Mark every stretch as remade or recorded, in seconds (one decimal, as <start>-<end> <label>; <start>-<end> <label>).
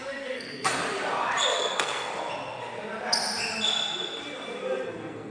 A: 0.0-0.8 remade; 0.8-1.5 recorded; 1.5-2.3 remade; 2.3-4.6 recorded; 4.6-5.3 remade